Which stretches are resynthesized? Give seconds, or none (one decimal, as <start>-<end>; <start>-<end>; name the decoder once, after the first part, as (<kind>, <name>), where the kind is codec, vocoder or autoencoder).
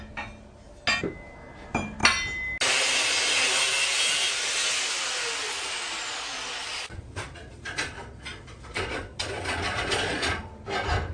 6.6-10.5 (vocoder, Vocos)